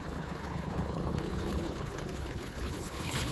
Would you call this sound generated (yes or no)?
yes